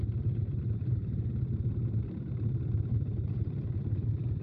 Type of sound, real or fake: fake